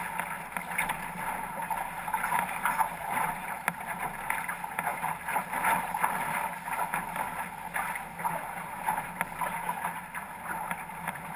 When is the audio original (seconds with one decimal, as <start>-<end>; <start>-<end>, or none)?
0.0-2.8; 3.8-11.4